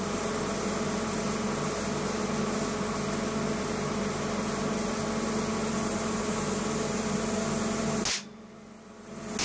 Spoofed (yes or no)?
no